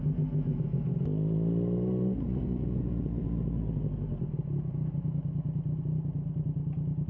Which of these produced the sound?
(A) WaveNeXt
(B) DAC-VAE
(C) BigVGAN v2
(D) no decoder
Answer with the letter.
D